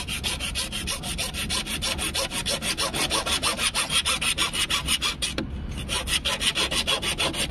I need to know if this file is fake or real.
real